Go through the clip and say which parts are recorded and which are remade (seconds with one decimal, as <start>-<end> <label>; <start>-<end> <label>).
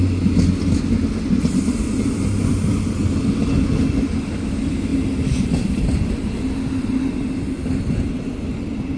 0.0-2.5 recorded; 2.5-3.0 remade; 3.0-9.0 recorded